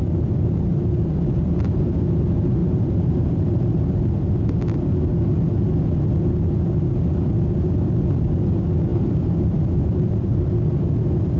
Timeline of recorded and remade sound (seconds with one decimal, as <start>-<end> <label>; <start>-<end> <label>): 0.0-2.6 recorded; 2.6-3.6 remade; 3.6-8.9 recorded; 8.9-10.4 remade; 10.4-11.4 recorded

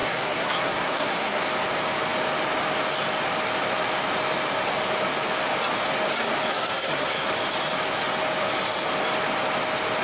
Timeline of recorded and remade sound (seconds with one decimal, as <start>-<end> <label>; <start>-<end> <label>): 0.0-1.4 remade; 1.4-6.5 recorded; 6.5-7.3 remade; 7.3-10.0 recorded

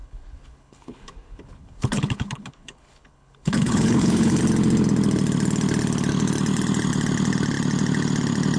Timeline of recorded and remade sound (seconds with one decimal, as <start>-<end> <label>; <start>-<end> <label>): 0.0-4.4 remade; 4.4-8.6 recorded

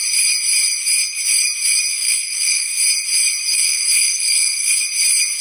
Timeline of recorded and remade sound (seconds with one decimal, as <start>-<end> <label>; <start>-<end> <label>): 0.0-1.9 recorded; 1.9-2.8 remade; 2.8-3.5 recorded; 3.5-4.7 remade; 4.7-5.4 recorded

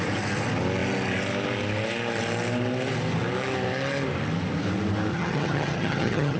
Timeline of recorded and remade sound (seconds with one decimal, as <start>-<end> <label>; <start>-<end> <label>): 0.0-5.1 recorded; 5.1-6.4 remade

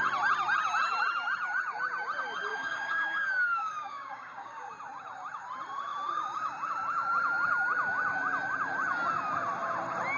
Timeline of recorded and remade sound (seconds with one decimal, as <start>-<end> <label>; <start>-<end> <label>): 0.0-2.5 recorded; 2.5-4.7 remade; 4.7-10.2 recorded